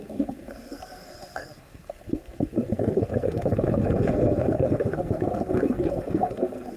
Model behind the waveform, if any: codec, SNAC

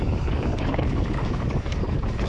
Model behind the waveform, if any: codec, DAC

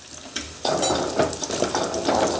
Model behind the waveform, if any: none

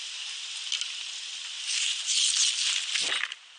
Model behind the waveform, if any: none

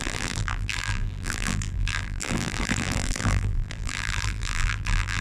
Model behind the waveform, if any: vocoder, BigVGAN v2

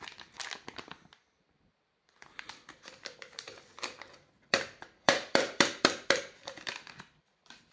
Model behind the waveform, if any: vocoder, BigVGAN v2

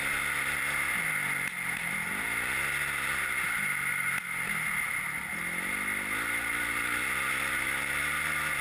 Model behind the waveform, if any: none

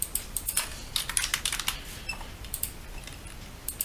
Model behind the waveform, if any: vocoder, BigVGAN v2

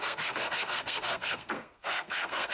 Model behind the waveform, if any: codec, SNAC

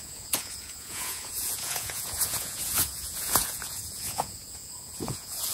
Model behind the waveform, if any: vocoder, Vocos